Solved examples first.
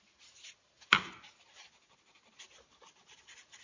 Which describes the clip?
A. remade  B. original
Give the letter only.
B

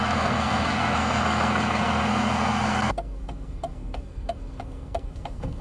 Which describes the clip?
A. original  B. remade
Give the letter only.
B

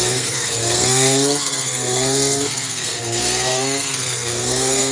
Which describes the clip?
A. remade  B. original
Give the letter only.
A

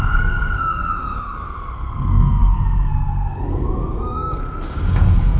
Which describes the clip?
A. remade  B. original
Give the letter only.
A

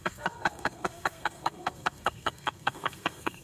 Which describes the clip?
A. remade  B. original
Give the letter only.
A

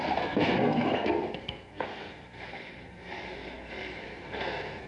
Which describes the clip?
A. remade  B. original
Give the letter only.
A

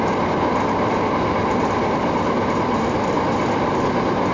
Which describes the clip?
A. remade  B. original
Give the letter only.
B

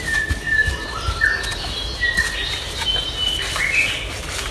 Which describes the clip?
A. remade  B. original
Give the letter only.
B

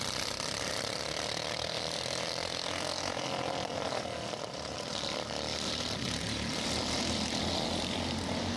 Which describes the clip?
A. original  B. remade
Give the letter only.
A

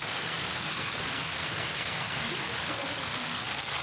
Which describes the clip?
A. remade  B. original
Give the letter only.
A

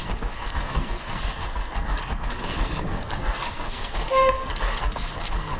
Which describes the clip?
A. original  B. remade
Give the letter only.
B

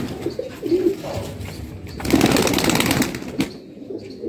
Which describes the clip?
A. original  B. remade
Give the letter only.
A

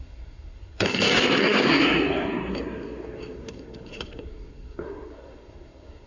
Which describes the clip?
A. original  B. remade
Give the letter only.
B